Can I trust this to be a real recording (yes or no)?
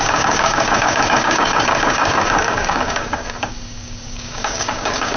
no